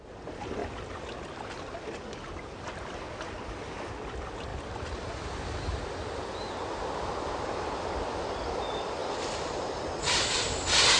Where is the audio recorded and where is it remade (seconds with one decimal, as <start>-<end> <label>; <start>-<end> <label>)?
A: 0.0-0.6 recorded; 0.6-2.3 remade; 2.3-4.5 recorded; 4.5-5.8 remade; 5.8-9.0 recorded; 9.0-9.8 remade; 9.8-11.0 recorded